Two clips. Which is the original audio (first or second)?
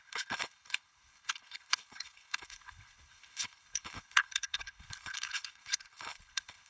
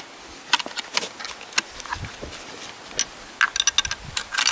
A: second